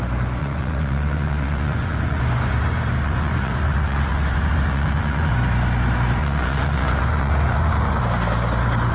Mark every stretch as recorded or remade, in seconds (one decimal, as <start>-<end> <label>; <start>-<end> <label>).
0.0-0.4 recorded; 0.4-5.3 remade; 5.3-6.2 recorded; 6.2-8.0 remade; 8.0-8.9 recorded